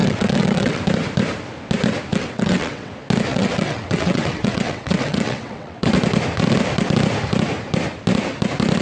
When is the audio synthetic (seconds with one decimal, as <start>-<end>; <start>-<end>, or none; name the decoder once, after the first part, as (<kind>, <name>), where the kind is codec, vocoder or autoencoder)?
0.0-0.8 (vocoder, WaveNeXt); 2.1-2.9; 3.3-5.9